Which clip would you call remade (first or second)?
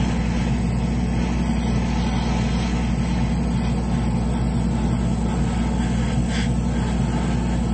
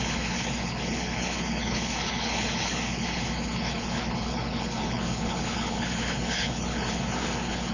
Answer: second